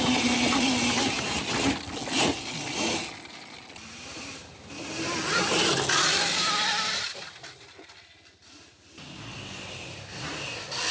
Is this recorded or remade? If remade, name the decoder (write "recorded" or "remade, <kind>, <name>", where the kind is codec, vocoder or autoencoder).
recorded